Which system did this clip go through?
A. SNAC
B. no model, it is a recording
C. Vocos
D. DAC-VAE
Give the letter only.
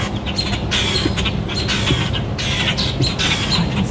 B